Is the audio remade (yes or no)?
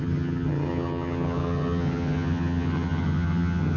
yes